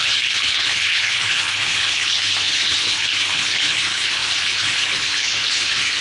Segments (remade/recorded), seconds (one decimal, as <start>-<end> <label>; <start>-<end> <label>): 0.0-6.0 remade

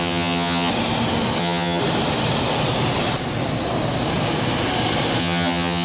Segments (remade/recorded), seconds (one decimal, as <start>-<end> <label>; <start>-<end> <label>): 0.0-0.7 remade; 0.7-1.4 recorded; 1.4-1.8 remade; 1.8-5.2 recorded; 5.2-5.8 remade

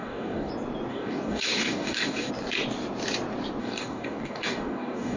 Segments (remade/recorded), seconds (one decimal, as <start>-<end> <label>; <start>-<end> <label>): 0.0-0.5 remade; 0.5-0.9 recorded; 0.9-2.3 remade; 2.3-3.6 recorded; 3.6-5.2 remade

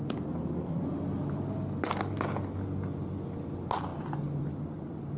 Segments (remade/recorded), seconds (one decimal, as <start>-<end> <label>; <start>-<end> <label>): 0.0-5.2 recorded

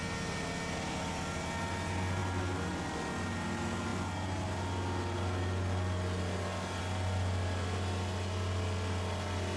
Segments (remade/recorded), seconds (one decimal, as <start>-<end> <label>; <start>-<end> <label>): 0.0-9.6 recorded